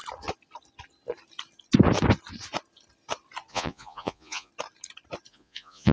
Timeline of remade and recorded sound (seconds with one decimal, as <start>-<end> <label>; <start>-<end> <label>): 0.0-3.5 recorded; 3.5-4.5 remade; 4.5-5.3 recorded; 5.3-5.9 remade